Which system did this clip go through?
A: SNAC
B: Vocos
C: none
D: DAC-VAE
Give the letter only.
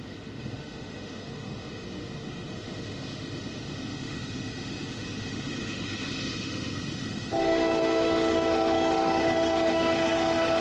D